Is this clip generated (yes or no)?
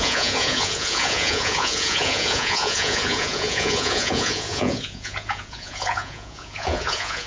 yes